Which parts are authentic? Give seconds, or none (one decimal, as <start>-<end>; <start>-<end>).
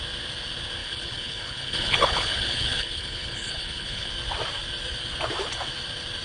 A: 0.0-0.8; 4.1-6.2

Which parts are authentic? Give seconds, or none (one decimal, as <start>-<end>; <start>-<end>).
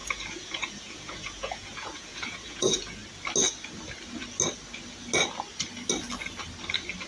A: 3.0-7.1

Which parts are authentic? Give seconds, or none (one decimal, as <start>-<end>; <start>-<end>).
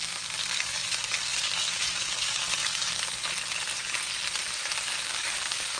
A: 3.2-4.7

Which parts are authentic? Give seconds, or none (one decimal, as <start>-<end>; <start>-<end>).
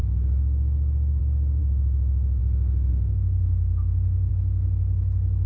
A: 0.0-1.6; 2.4-2.9; 4.3-5.5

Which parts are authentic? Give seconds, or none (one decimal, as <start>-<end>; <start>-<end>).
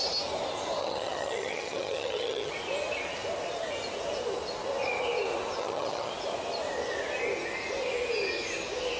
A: 0.0-0.8; 2.5-5.6; 6.1-9.0